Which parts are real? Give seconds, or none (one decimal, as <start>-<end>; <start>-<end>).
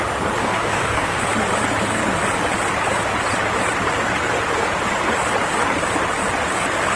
0.0-0.4; 1.2-7.0